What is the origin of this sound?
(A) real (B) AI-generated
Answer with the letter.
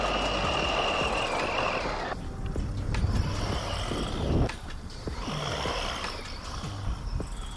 A